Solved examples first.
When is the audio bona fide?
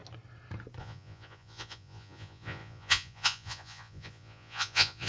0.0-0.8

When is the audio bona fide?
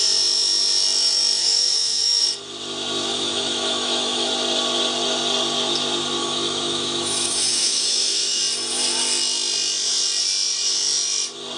0.0-1.4; 2.2-3.1; 4.3-6.2; 8.4-11.6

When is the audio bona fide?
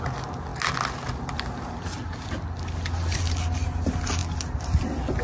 0.0-5.2